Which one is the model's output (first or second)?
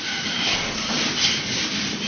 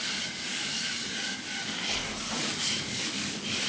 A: second